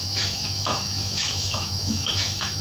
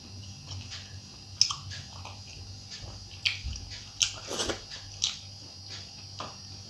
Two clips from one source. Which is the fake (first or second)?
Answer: first